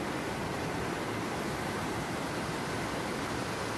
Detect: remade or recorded recorded